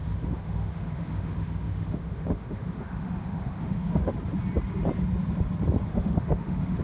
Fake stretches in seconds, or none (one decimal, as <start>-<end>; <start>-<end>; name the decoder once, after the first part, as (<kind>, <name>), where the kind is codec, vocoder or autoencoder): 0.0-4.1 (autoencoder, DAC-VAE); 5.9-6.8